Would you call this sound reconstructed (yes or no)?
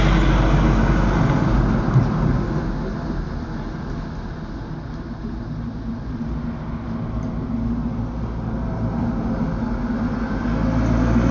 no